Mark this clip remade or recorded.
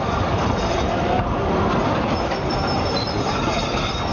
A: recorded